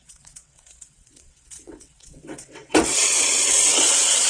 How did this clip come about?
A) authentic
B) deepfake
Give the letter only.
B